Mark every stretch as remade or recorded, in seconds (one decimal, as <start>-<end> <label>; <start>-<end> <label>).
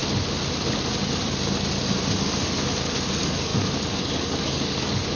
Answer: 0.0-3.1 recorded; 3.1-3.5 remade; 3.5-4.0 recorded; 4.0-5.2 remade